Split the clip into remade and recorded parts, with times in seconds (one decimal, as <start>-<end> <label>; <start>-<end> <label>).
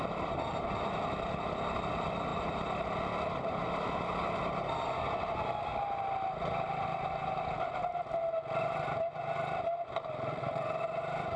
0.0-11.4 recorded